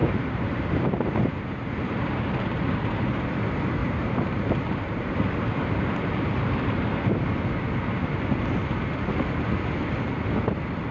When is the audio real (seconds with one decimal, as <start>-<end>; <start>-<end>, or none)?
3.4-3.8; 6.9-10.9